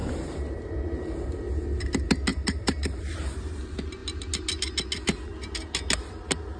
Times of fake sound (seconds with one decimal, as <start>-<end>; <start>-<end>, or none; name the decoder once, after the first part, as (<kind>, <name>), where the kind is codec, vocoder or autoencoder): 0.0-0.6 (vocoder, BigVGAN v2); 2.3-3.6